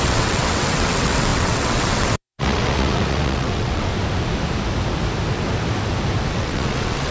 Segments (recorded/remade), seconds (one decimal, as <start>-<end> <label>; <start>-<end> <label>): 0.0-3.9 remade; 3.9-6.3 recorded; 6.3-7.1 remade